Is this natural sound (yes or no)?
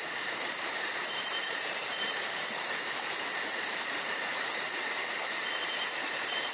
no